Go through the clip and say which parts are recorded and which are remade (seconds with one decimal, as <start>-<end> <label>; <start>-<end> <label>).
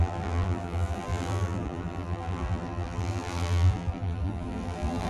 0.0-5.1 remade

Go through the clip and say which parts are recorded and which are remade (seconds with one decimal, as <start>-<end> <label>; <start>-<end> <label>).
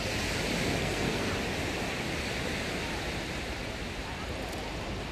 0.0-0.8 recorded; 0.8-1.3 remade; 1.3-5.1 recorded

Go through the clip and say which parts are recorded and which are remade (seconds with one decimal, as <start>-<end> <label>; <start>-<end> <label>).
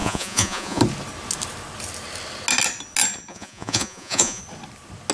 0.0-0.8 remade; 0.8-3.3 recorded; 3.3-4.4 remade; 4.4-5.1 recorded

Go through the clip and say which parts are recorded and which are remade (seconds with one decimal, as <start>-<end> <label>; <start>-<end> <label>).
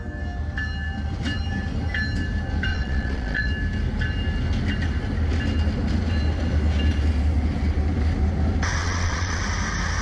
0.0-2.7 recorded; 2.7-3.5 remade; 3.5-8.8 recorded; 8.8-9.4 remade; 9.4-10.0 recorded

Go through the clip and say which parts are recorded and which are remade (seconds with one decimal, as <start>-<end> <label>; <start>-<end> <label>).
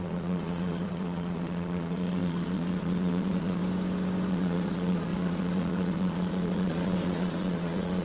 0.0-3.6 remade; 3.6-4.3 recorded; 4.3-8.0 remade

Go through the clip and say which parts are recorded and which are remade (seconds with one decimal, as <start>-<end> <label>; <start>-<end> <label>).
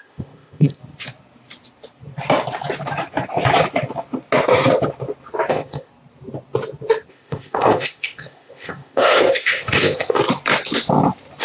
0.0-0.8 remade; 0.8-5.5 recorded; 5.5-5.9 remade; 5.9-7.1 recorded; 7.1-10.2 remade; 10.2-11.4 recorded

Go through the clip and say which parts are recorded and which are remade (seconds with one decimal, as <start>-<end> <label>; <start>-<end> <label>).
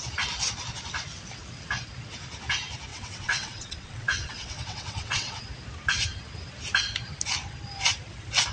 0.0-2.9 recorded; 2.9-5.4 remade; 5.4-8.5 recorded